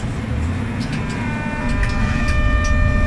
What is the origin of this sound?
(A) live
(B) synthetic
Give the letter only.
A